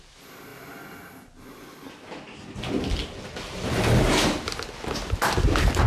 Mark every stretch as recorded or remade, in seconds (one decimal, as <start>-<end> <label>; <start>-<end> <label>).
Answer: 0.0-5.9 recorded